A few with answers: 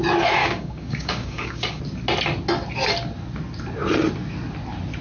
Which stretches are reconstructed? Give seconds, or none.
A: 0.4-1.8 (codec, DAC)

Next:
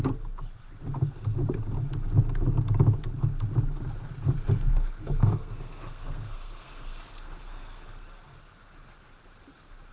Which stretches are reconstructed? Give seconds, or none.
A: 4.7-8.4 (codec, SNAC)